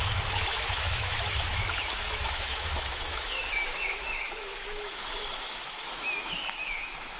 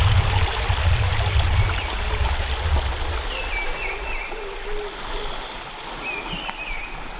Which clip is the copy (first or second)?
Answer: first